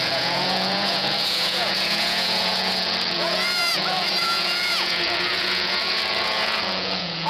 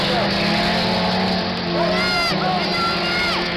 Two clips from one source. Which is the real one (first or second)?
second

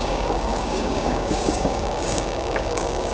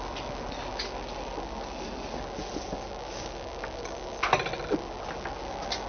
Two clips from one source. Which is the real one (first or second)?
second